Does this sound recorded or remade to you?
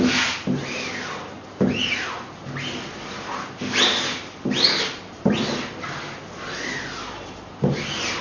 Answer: recorded